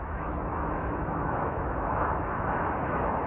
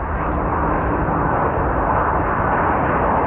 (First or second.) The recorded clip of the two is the second